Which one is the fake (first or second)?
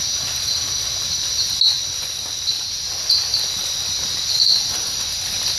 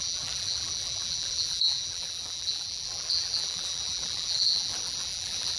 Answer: second